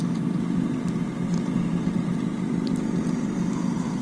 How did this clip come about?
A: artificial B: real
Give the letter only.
B